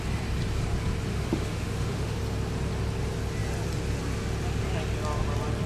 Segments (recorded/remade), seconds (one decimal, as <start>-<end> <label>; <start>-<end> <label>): 0.0-1.1 recorded; 1.1-2.2 remade; 2.2-5.7 recorded